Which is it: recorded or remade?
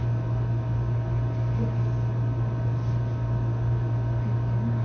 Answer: recorded